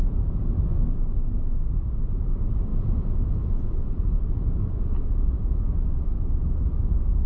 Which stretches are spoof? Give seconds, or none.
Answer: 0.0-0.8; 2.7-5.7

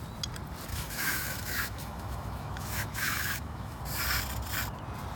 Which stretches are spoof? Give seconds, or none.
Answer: 0.7-3.8